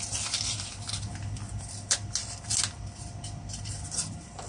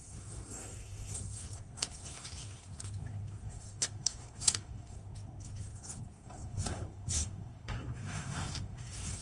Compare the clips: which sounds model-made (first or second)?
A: second